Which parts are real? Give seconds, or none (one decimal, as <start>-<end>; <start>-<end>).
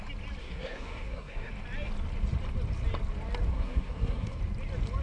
0.0-0.4; 1.5-3.5; 4.4-5.0